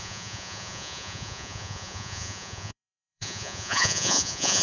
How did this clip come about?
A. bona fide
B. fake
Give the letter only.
B